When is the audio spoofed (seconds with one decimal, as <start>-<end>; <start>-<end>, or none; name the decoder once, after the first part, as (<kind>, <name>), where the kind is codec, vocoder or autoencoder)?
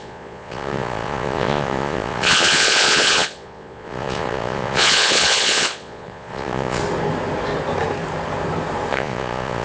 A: 0.0-6.8 (vocoder, Vocos); 8.9-9.6